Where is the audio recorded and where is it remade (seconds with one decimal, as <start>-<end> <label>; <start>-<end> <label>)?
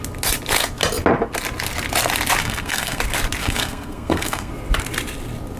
0.0-2.4 recorded; 2.4-3.0 remade; 3.0-3.4 recorded; 3.4-4.5 remade; 4.5-5.6 recorded